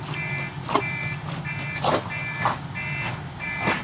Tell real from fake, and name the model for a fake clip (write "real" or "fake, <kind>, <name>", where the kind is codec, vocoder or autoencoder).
real